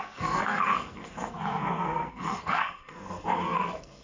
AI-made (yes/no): yes